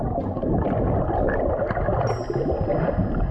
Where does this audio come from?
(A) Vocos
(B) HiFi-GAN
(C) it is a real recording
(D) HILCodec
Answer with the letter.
C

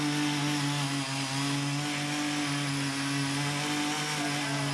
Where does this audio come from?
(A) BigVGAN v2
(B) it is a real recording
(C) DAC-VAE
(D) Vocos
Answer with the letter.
B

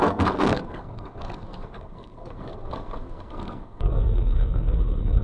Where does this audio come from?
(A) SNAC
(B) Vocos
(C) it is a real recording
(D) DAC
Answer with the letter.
A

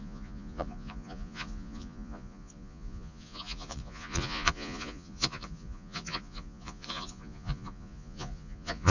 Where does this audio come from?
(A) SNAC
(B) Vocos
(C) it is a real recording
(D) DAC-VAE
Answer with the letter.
B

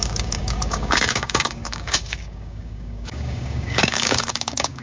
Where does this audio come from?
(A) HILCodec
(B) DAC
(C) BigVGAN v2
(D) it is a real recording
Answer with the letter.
B